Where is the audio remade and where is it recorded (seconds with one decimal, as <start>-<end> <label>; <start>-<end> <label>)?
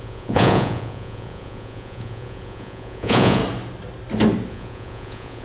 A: 0.0-3.4 remade; 3.4-4.5 recorded; 4.5-5.4 remade